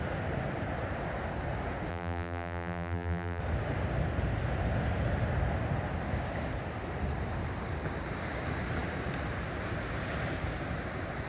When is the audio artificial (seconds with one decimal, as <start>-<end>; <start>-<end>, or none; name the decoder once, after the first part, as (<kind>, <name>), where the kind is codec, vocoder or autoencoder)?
1.9-3.4 (vocoder, BigVGAN v2)

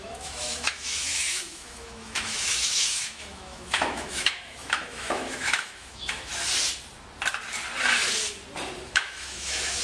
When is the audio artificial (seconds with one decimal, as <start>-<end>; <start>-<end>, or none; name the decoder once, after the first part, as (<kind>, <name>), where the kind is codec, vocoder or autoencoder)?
0.0-6.3 (autoencoder, DAC-VAE); 8.9-9.8

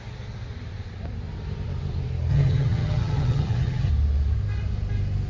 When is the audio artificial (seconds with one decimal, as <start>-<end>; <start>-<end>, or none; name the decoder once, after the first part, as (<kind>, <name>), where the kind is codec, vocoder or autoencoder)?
2.3-3.9 (vocoder, HiFi-GAN)

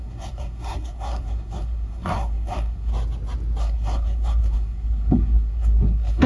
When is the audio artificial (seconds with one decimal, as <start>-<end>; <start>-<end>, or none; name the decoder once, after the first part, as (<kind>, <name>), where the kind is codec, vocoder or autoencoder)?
0.0-2.9 (codec, SNAC); 3.6-6.3

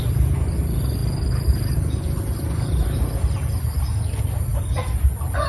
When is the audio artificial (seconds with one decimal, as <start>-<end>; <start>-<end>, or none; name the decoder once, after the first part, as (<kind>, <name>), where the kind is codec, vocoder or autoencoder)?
none